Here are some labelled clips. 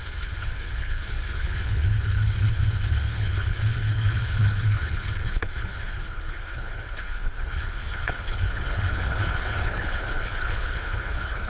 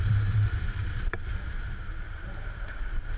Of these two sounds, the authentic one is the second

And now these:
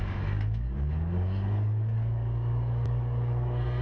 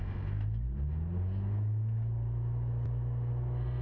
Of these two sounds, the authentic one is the second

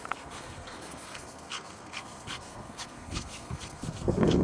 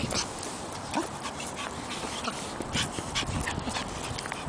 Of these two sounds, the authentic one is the second